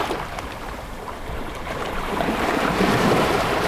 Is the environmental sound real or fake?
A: fake